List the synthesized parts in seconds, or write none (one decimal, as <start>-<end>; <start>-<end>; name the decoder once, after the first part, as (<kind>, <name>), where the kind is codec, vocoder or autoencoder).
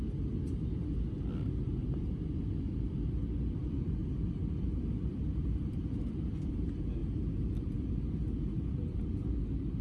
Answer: 1.8-2.4 (vocoder, BigVGAN v2); 4.0-6.5